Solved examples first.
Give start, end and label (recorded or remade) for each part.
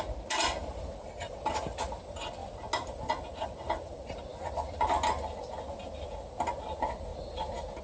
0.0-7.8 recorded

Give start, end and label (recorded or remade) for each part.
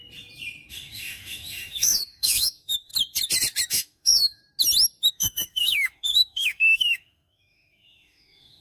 0.0-0.7 recorded; 0.7-2.9 remade; 2.9-3.7 recorded; 3.7-4.4 remade; 4.4-5.1 recorded; 5.1-8.6 remade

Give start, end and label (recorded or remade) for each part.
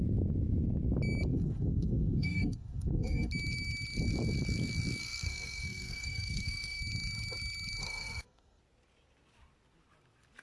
0.0-1.3 recorded; 1.3-3.3 remade; 3.3-5.0 recorded; 5.0-6.8 remade; 6.8-7.8 recorded; 7.8-8.6 remade; 8.6-10.4 recorded